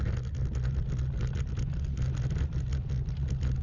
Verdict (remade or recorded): recorded